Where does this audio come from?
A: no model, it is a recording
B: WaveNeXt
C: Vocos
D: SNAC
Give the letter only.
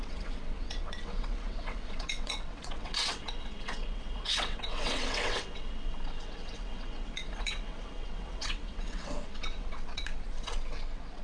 B